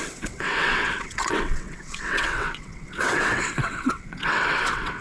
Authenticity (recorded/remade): remade